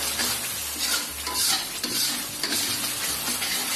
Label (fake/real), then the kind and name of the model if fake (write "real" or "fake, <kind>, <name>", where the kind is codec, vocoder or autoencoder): real